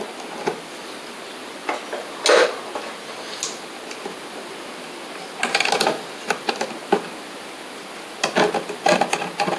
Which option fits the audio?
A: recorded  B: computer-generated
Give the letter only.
A